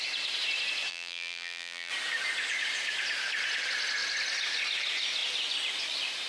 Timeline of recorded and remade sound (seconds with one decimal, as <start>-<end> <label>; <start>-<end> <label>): 0.0-0.9 recorded; 0.9-1.9 remade; 1.9-6.3 recorded

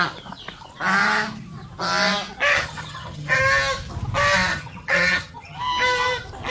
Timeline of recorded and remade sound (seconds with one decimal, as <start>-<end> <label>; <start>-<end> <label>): 0.0-2.5 recorded; 2.5-3.4 remade; 3.4-4.5 recorded; 4.5-5.6 remade; 5.6-6.5 recorded

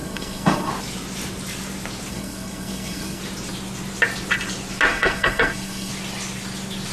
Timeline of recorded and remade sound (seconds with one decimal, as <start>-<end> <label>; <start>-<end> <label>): 0.0-0.7 remade; 0.7-2.1 recorded; 2.1-3.2 remade; 3.2-4.9 recorded; 4.9-5.9 remade; 5.9-6.9 recorded

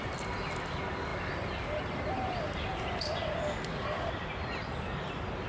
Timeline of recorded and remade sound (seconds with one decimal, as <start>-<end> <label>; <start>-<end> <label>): 0.0-5.5 recorded

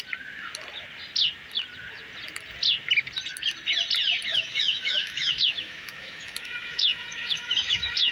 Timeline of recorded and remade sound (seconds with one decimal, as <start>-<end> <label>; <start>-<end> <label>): 0.0-4.3 recorded; 4.3-8.1 remade

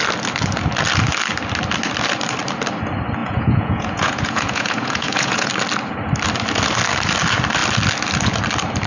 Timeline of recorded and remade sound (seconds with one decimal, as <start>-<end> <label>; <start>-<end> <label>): 0.0-3.2 recorded; 3.2-5.5 remade; 5.5-8.9 recorded